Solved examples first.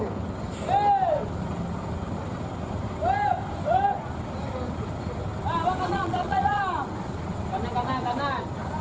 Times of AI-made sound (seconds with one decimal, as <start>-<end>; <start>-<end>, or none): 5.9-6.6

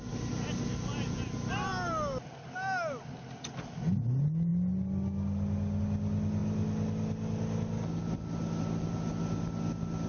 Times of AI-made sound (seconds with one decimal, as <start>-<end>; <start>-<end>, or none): none

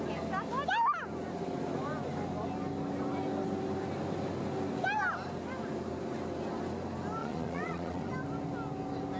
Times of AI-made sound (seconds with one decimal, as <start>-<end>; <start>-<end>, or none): 7.2-8.1

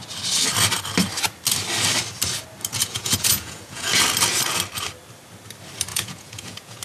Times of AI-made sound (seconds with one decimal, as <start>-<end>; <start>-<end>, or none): 2.7-4.0; 5.9-6.8

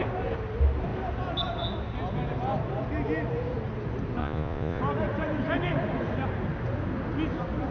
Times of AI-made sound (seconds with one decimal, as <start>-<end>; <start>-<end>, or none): 4.2-4.8

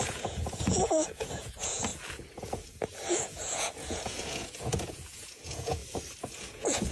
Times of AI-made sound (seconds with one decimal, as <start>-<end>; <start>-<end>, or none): 0.0-1.9; 2.4-5.8; 6.3-6.9

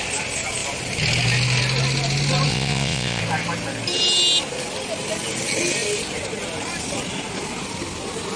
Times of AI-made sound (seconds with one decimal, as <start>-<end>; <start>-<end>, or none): 2.5-3.2

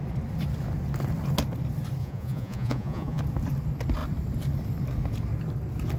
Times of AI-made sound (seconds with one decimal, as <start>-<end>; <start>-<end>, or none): 2.0-3.2